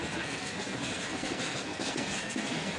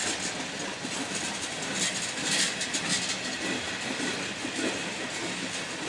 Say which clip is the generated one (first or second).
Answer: first